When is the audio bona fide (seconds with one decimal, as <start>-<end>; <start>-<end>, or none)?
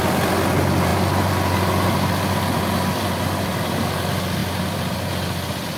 0.0-4.4; 5.1-5.8